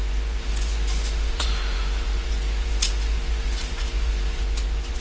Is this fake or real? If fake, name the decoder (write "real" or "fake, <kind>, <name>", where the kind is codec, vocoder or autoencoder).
fake, vocoder, Vocos